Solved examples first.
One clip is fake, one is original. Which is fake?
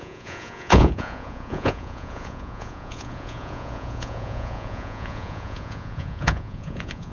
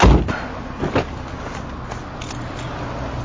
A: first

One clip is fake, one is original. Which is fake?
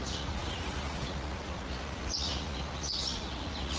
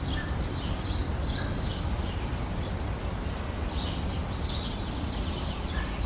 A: first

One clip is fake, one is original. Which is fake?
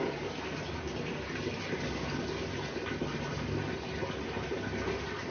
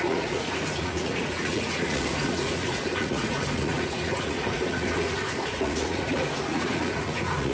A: second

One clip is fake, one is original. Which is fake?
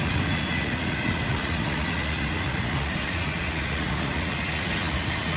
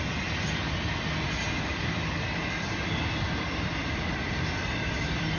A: first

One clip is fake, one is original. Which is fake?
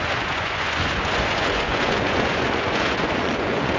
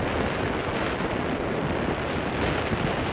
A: first